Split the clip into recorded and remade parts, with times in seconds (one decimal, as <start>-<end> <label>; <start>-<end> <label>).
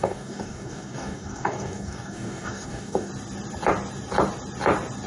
0.0-3.1 remade; 3.1-5.1 recorded